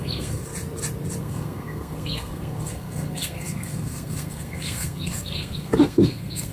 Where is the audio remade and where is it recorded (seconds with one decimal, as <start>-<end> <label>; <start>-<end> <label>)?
0.0-0.5 remade; 0.5-1.2 recorded; 1.2-6.5 remade